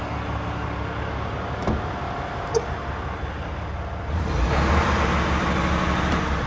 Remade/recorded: recorded